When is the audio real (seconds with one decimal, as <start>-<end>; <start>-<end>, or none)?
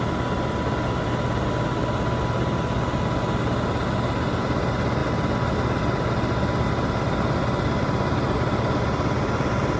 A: 0.0-9.8